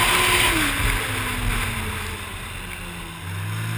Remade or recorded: recorded